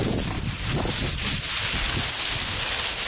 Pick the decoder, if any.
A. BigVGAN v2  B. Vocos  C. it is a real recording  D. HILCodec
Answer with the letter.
C